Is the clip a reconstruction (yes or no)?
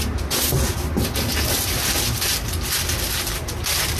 no